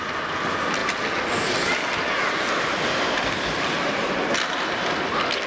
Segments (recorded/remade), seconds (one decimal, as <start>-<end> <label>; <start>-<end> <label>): 0.0-5.5 recorded